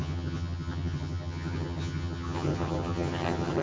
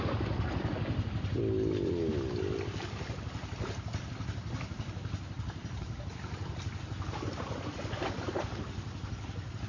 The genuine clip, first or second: second